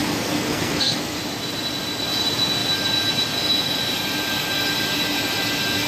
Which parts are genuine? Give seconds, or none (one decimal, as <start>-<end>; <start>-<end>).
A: 1.2-5.9